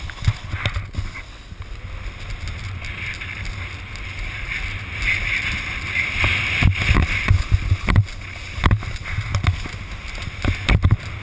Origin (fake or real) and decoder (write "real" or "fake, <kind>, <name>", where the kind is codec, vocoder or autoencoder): real